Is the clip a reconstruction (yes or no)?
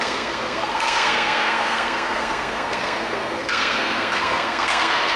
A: yes